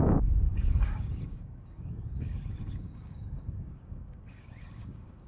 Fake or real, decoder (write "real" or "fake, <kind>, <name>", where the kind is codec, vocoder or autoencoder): fake, codec, DAC